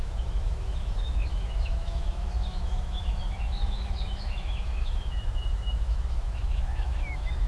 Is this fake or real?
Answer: fake